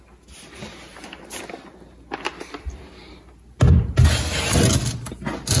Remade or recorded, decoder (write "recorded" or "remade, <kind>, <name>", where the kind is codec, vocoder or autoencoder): recorded